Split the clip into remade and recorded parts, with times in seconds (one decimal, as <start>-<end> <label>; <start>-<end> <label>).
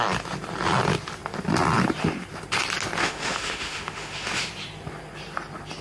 0.0-3.0 recorded; 3.0-4.5 remade; 4.5-5.8 recorded